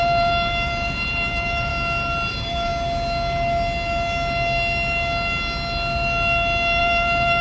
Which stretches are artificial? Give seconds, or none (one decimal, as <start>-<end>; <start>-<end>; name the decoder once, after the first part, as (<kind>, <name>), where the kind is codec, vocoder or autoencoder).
0.0-1.7 (vocoder, BigVGAN v2); 2.3-2.7; 6.8-7.4